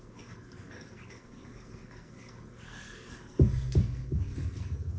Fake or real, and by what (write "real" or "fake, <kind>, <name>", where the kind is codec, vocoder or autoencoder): fake, codec, SNAC